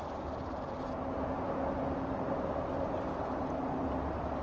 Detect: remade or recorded remade